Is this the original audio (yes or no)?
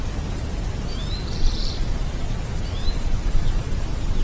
yes